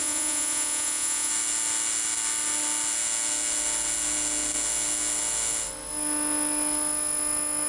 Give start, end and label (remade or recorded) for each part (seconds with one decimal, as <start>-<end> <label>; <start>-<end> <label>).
0.0-1.3 remade; 1.3-7.7 recorded